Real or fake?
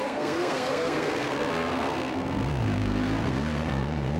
fake